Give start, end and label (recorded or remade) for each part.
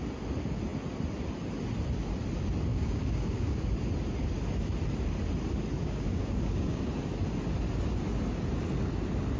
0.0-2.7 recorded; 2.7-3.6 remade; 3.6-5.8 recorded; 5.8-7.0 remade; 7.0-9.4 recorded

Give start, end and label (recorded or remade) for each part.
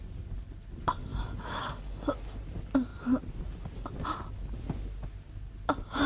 0.0-1.1 recorded; 1.1-2.1 remade; 2.1-6.1 recorded